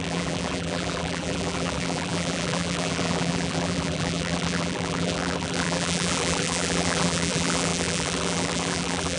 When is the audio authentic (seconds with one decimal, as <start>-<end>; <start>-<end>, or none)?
none